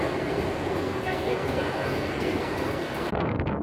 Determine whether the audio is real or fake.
fake